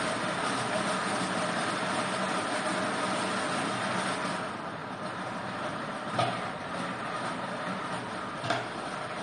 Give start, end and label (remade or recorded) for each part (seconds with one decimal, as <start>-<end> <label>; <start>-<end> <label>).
0.0-9.2 recorded